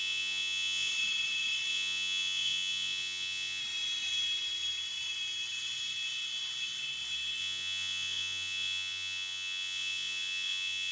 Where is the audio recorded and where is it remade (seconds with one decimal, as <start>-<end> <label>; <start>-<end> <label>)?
0.0-0.9 remade; 0.9-1.7 recorded; 1.7-3.6 remade; 3.6-7.4 recorded; 7.4-10.9 remade

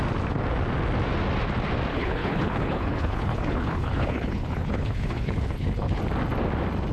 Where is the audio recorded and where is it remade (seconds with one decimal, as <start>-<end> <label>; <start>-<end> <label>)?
0.0-1.9 recorded; 1.9-6.0 remade; 6.0-6.9 recorded

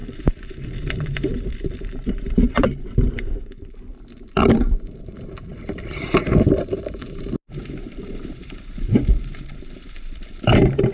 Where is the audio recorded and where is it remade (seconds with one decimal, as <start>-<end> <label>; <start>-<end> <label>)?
0.0-3.9 remade; 3.9-5.0 recorded; 5.0-10.9 remade

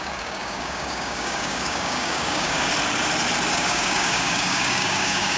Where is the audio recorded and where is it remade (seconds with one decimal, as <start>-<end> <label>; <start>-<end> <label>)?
0.0-2.7 remade; 2.7-3.5 recorded; 3.5-5.4 remade

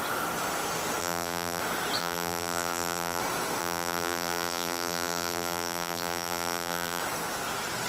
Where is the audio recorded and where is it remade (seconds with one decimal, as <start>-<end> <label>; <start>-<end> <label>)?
0.0-1.0 recorded; 1.0-1.6 remade; 1.6-2.0 recorded; 2.0-3.2 remade; 3.2-3.6 recorded; 3.6-7.0 remade; 7.0-7.9 recorded

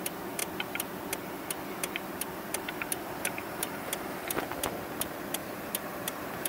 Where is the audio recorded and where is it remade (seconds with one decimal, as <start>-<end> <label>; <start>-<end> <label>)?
0.0-5.4 recorded; 5.4-6.5 remade